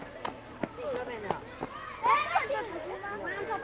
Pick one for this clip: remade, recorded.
recorded